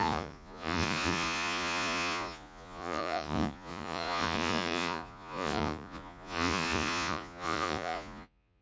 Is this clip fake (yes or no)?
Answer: yes